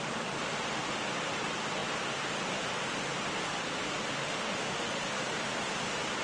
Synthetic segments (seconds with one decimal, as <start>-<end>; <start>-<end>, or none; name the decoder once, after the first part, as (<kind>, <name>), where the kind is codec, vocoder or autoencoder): 4.2-4.9 (autoencoder, DAC-VAE)